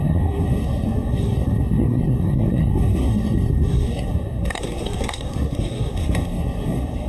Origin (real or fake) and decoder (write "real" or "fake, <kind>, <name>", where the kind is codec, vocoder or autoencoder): fake, codec, SNAC